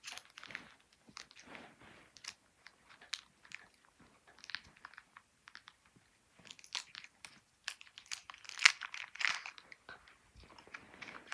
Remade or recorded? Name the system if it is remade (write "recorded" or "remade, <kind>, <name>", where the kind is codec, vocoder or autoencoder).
recorded